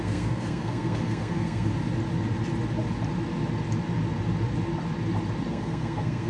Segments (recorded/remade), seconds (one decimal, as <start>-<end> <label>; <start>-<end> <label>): 0.0-1.7 remade; 1.7-5.5 recorded; 5.5-6.3 remade